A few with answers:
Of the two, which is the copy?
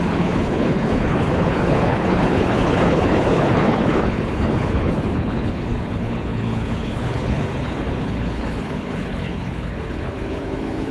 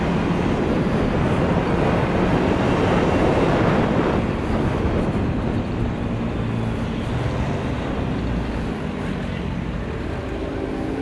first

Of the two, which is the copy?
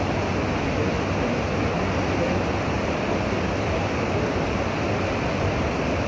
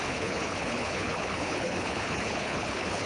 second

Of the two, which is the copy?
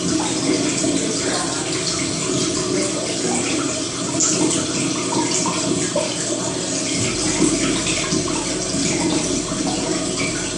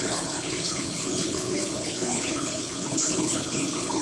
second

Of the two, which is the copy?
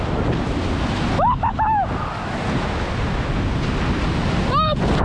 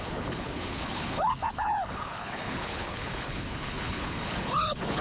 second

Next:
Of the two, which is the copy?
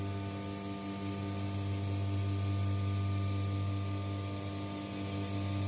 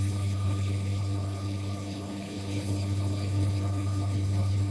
second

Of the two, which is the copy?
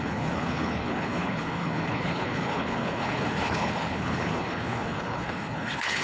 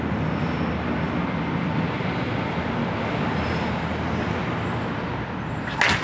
first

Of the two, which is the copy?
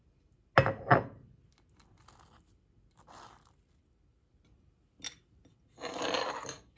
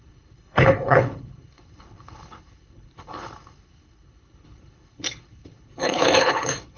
second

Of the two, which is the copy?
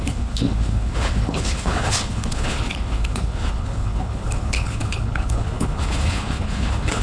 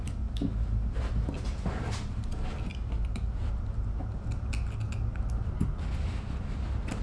first